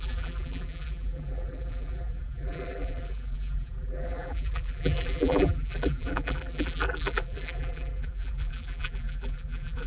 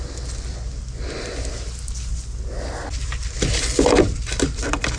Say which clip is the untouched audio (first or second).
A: second